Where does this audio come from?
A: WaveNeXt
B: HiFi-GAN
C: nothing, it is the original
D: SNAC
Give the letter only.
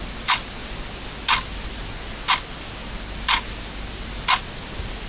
C